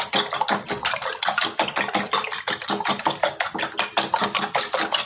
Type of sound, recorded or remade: recorded